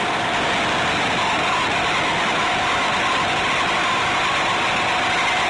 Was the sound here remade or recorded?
recorded